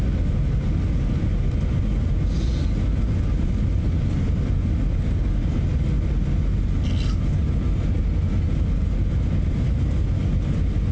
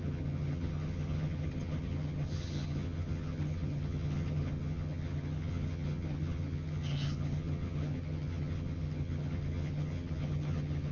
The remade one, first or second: second